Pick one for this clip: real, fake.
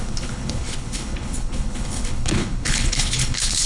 fake